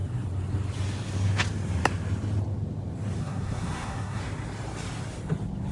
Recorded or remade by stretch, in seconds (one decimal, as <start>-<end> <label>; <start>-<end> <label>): 0.0-3.2 recorded; 3.2-4.2 remade; 4.2-5.7 recorded